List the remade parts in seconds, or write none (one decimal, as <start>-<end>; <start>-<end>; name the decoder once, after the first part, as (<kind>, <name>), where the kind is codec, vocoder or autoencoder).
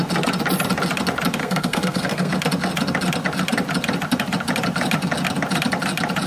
1.4-2.3 (codec, SNAC)